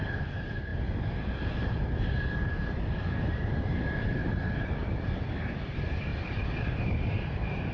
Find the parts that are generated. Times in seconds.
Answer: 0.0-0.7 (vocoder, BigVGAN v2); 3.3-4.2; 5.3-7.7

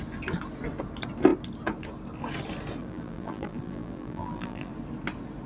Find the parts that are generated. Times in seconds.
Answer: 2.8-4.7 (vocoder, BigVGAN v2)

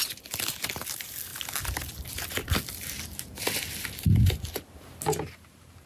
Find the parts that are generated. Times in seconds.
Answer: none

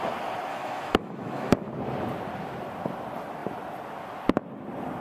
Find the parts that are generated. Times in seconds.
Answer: 0.5-1.7 (autoencoder, DAC-VAE)